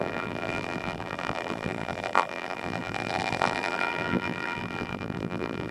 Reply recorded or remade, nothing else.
remade